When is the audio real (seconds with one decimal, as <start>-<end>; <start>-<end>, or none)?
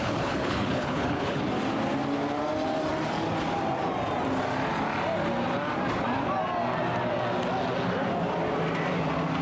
1.4-9.4